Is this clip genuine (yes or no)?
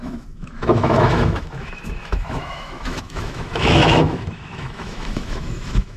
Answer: no